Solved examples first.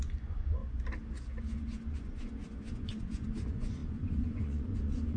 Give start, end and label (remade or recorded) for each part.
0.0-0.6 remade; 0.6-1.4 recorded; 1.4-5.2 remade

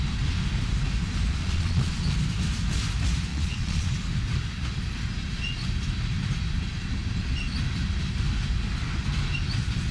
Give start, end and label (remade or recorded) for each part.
0.0-1.4 recorded; 1.4-2.0 remade; 2.0-3.3 recorded; 3.3-3.9 remade; 3.9-9.9 recorded

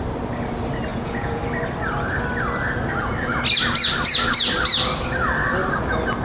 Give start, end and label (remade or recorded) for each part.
0.0-0.9 recorded; 0.9-1.4 remade; 1.4-6.2 recorded

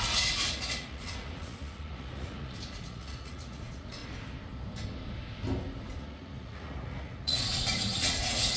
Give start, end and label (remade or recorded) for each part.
0.0-4.0 remade; 4.0-6.0 recorded; 6.0-8.6 remade

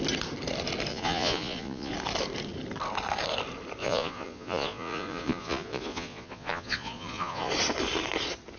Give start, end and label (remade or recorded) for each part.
0.0-0.9 recorded; 0.9-1.9 remade; 1.9-3.8 recorded; 3.8-7.5 remade; 7.5-8.6 recorded

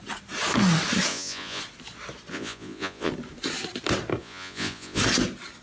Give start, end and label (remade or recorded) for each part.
0.0-1.1 recorded; 1.1-1.6 remade; 1.6-2.3 recorded; 2.3-3.1 remade; 3.1-4.2 recorded; 4.2-5.0 remade; 5.0-5.6 recorded

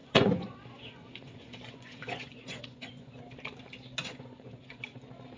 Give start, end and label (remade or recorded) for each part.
0.0-3.2 remade; 3.2-4.0 recorded; 4.0-5.0 remade; 5.0-5.4 recorded